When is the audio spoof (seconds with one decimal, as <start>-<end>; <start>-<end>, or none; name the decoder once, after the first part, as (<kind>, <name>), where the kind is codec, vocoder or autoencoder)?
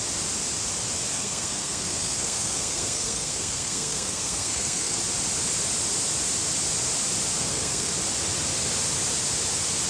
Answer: 1.1-5.0 (codec, SNAC); 7.4-7.9